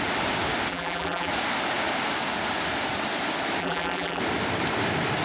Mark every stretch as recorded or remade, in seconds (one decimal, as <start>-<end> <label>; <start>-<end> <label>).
0.0-0.7 recorded; 0.7-1.3 remade; 1.3-3.6 recorded; 3.6-4.2 remade; 4.2-5.2 recorded